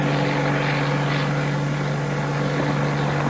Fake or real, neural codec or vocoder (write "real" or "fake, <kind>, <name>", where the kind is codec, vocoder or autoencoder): real